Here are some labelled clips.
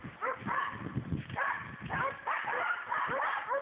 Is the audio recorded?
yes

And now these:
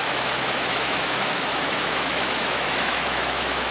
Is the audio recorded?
no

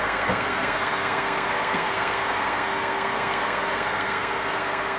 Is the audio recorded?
no